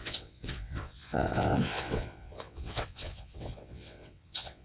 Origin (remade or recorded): remade